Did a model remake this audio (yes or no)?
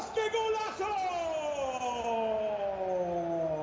no